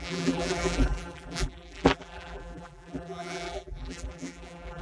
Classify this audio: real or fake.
fake